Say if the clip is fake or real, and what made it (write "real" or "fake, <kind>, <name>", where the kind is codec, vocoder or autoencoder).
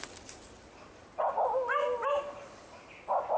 real